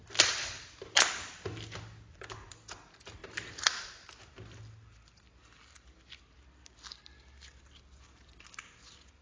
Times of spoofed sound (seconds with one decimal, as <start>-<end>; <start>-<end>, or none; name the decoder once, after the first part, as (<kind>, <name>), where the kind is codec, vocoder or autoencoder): none

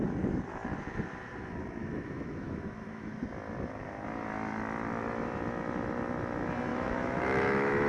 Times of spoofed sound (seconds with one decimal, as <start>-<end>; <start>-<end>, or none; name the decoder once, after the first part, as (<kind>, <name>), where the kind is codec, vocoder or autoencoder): 1.8-3.1 (autoencoder, DAC-VAE); 6.7-7.9